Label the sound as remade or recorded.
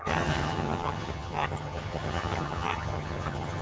remade